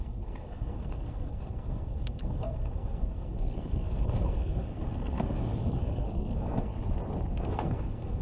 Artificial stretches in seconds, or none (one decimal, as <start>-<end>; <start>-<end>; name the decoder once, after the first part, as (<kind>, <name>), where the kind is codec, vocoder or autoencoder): 0.0-6.7 (codec, SNAC); 7.3-8.2

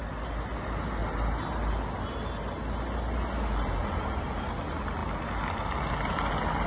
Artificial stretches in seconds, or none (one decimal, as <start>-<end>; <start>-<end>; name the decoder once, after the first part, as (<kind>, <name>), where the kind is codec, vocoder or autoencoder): none